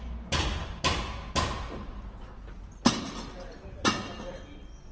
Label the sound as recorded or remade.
recorded